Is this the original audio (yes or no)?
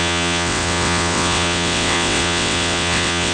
no